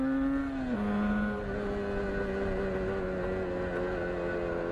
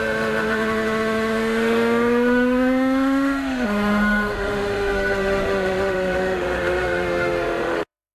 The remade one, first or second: second